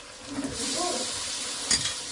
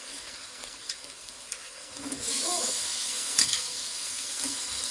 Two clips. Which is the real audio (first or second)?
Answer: first